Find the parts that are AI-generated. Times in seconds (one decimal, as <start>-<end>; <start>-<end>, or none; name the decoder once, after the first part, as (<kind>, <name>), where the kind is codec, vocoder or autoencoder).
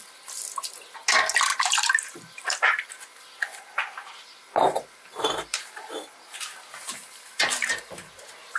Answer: 1.5-2.9 (vocoder, BigVGAN v2); 3.5-8.6